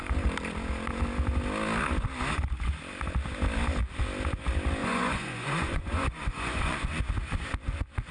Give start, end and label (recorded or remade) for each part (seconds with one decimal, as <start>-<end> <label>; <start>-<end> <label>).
0.0-4.8 recorded; 4.8-7.0 remade; 7.0-8.1 recorded